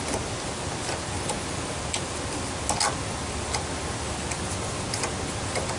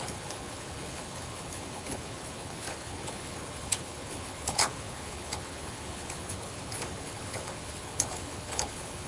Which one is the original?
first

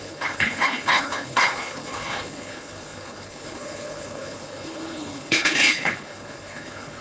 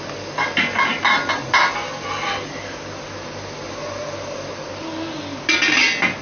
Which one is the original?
second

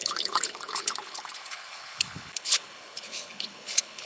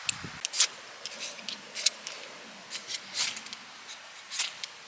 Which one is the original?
second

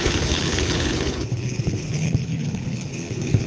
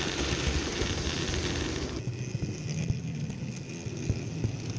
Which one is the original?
second